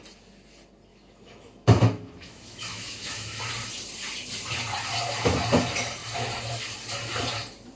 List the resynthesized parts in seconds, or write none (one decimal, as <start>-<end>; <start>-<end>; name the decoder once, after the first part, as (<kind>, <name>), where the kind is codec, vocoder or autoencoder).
0.9-3.4 (autoencoder, DAC-VAE)